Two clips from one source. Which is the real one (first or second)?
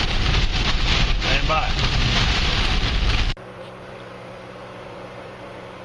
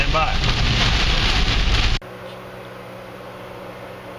second